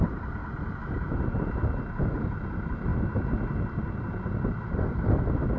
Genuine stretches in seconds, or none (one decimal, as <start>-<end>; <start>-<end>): 0.4-2.2; 2.9-5.6